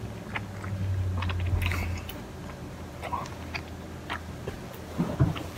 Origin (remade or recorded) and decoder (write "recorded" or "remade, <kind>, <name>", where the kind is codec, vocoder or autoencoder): recorded